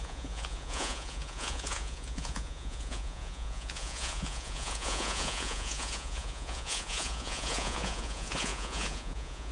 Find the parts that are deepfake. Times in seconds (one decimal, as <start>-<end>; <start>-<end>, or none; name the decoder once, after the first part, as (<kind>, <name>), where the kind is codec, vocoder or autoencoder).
0.0-9.5 (vocoder, Vocos)